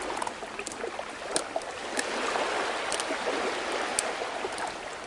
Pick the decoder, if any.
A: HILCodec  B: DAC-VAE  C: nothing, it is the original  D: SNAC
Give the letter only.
C